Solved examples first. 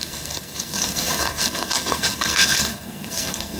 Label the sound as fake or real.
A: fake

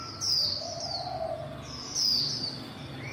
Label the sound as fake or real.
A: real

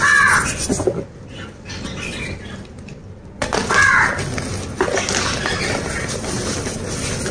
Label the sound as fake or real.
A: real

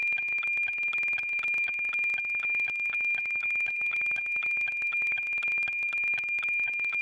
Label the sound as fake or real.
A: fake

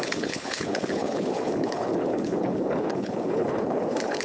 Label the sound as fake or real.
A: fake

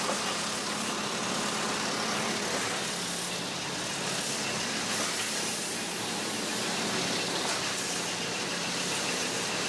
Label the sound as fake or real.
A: real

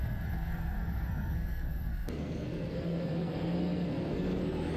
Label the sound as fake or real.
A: fake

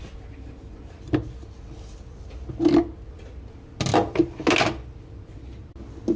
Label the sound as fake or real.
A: real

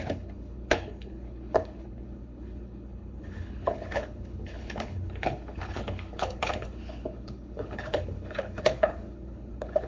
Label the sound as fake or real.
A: fake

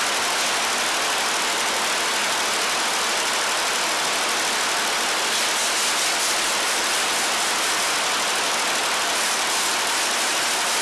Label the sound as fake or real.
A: real